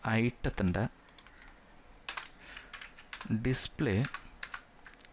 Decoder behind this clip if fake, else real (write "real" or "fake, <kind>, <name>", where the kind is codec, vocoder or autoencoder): real